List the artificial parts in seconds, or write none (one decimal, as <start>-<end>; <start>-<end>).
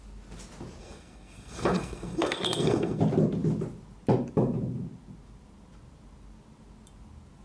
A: 0.8-3.0